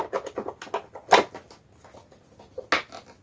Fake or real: real